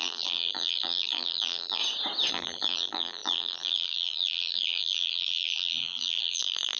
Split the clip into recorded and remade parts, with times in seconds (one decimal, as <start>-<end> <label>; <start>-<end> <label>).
0.0-1.8 remade; 1.8-2.3 recorded; 2.3-6.8 remade